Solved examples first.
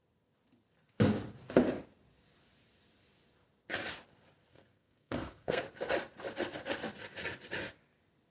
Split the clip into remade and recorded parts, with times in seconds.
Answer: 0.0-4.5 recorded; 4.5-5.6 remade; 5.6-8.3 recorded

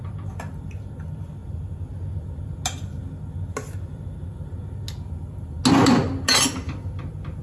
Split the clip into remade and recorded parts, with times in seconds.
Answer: 0.0-7.4 recorded